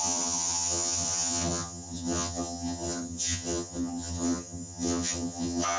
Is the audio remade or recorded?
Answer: remade